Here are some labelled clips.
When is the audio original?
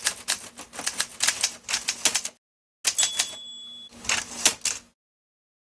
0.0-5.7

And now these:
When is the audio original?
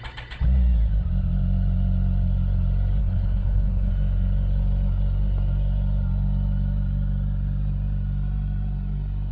0.0-3.0; 3.9-9.3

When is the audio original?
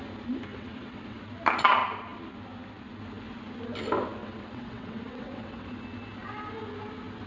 0.0-0.5; 1.2-4.2; 5.7-7.3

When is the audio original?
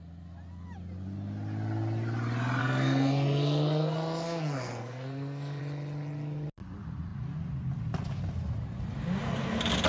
0.0-2.6; 5.6-9.9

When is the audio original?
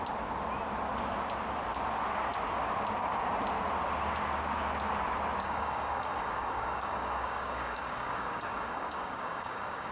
0.0-5.4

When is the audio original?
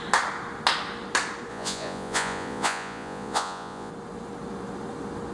0.0-1.5; 3.9-5.3